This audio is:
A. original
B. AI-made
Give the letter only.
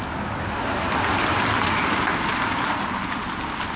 A